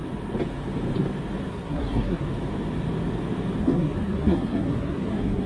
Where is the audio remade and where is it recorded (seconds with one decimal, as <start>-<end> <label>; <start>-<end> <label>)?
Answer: 0.0-1.5 recorded; 1.5-2.3 remade; 2.3-3.6 recorded; 3.6-5.5 remade